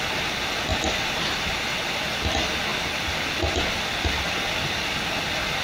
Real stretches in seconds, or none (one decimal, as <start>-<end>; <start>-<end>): 0.0-0.7; 2.0-5.6